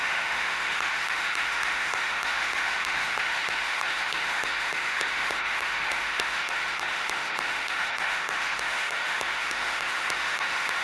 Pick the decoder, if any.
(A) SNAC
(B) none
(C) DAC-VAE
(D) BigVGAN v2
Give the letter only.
C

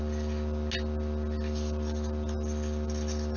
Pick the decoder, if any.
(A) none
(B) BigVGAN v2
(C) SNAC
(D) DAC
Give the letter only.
A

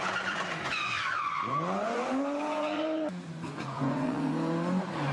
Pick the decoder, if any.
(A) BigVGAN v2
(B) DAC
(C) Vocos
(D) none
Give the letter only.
C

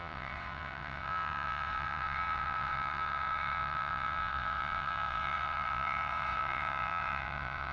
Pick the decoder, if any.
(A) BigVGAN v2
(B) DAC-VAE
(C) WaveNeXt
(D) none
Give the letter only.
C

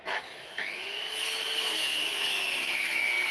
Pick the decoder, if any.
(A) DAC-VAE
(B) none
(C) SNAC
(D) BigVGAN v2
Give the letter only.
A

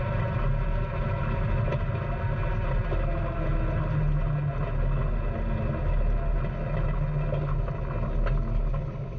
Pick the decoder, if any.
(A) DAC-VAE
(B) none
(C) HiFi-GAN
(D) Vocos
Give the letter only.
B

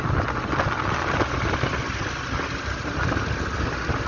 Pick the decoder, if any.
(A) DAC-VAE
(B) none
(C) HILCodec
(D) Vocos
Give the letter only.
B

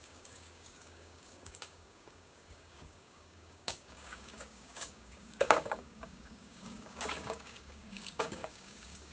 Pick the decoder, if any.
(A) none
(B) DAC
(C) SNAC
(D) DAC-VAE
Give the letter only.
B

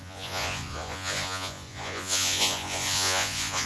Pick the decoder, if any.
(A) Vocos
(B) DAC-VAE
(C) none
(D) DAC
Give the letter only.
A